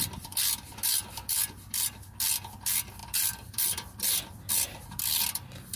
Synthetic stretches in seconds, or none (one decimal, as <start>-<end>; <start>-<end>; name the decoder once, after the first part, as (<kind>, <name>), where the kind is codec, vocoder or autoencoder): none